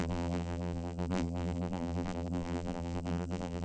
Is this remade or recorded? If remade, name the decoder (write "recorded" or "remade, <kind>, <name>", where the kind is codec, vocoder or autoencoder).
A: remade, vocoder, BigVGAN v2